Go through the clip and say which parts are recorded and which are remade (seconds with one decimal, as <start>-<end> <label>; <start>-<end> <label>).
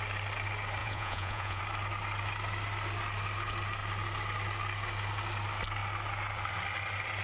0.0-0.8 recorded; 0.8-1.6 remade; 1.6-7.2 recorded